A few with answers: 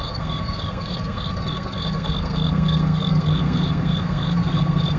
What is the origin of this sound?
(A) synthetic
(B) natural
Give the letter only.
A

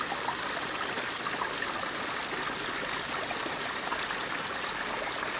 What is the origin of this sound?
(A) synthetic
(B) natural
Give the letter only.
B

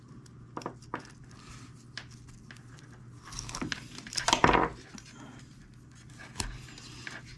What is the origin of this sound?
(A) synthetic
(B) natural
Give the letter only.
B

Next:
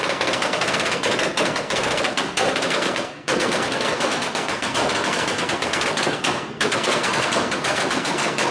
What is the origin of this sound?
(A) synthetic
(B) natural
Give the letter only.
A